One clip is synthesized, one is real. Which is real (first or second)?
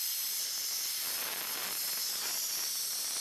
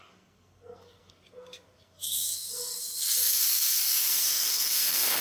first